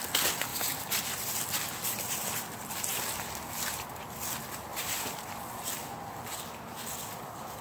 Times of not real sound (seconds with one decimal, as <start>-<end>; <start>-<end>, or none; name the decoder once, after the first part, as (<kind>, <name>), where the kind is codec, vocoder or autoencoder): 0.5-1.3 (vocoder, BigVGAN v2); 4.7-5.4